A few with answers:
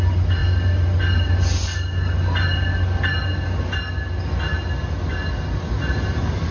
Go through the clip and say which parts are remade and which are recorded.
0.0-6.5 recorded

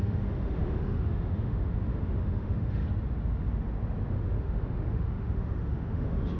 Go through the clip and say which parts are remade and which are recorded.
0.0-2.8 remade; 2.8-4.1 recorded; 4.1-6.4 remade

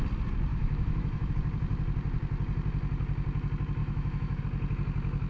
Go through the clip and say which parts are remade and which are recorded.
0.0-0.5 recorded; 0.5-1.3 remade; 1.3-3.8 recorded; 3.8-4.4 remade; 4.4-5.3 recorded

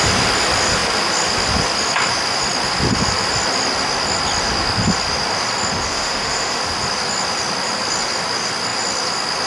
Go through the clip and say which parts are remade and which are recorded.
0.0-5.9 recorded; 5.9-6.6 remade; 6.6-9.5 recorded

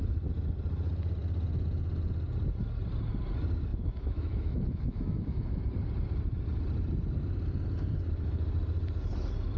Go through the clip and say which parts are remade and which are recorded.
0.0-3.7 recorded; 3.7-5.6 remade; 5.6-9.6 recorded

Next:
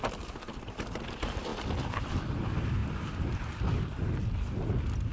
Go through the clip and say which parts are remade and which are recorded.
0.0-5.1 recorded

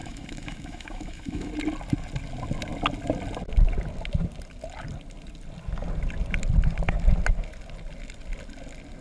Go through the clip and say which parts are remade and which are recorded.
0.0-1.5 remade; 1.5-9.0 recorded